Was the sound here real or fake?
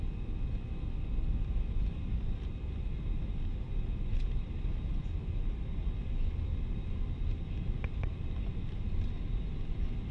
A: real